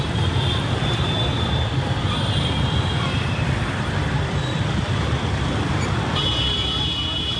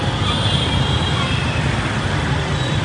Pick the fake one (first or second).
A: first